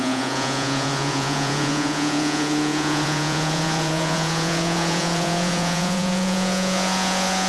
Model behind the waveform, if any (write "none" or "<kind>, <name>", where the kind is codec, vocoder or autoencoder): vocoder, Vocos